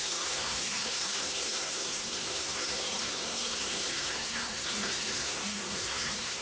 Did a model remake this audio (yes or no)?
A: yes